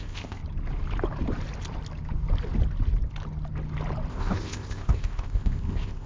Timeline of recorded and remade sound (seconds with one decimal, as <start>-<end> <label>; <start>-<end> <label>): 0.0-0.4 remade; 0.4-4.1 recorded; 4.1-6.1 remade